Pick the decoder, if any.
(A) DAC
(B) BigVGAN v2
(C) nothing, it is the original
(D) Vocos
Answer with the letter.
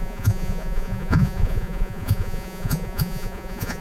D